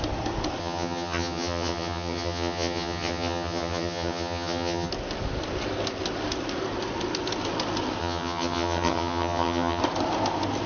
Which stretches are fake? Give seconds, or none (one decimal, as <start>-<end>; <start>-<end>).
0.6-4.9; 8.0-9.8